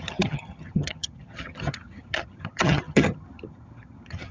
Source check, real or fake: fake